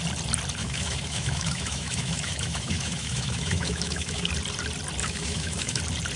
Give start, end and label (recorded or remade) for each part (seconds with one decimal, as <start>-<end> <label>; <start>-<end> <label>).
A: 0.0-0.6 recorded; 0.6-4.3 remade; 4.3-5.0 recorded; 5.0-5.8 remade; 5.8-6.2 recorded